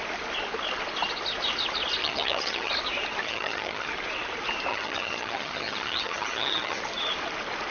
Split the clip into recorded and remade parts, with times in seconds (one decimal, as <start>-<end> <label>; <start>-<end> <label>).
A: 0.0-2.0 recorded; 2.0-2.7 remade; 2.7-3.2 recorded; 3.2-3.9 remade; 3.9-4.7 recorded; 4.7-6.8 remade; 6.8-7.7 recorded